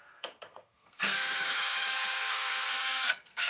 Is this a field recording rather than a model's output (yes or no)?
no